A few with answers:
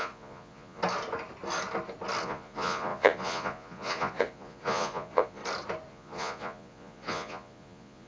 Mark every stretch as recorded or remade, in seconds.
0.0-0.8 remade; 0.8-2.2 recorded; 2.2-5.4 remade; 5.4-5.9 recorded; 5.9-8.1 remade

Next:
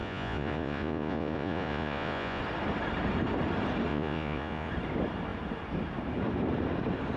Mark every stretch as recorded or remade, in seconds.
0.0-2.4 remade; 2.4-3.9 recorded; 3.9-4.7 remade; 4.7-7.2 recorded

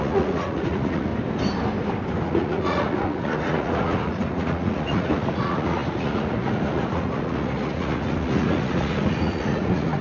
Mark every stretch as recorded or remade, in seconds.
0.0-1.1 remade; 1.1-2.2 recorded; 2.2-10.0 remade

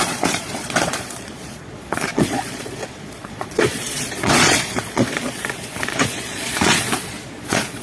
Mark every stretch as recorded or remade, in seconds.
0.0-7.8 remade

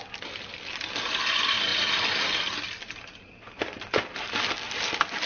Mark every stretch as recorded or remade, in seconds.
0.0-5.3 recorded